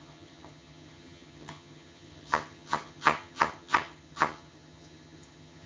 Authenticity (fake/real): fake